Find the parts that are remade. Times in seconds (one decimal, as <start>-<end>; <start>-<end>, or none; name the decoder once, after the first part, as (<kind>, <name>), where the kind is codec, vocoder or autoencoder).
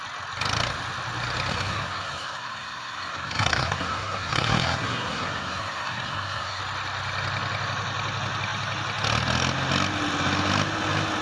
1.5-6.6 (codec, SNAC)